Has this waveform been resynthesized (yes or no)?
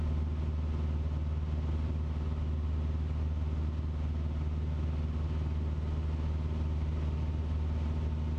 no